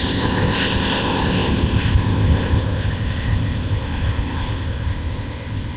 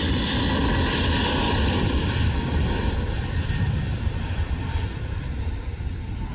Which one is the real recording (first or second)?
second